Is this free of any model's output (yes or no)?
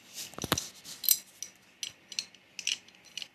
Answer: yes